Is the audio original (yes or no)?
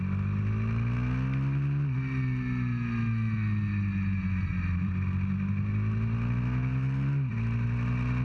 yes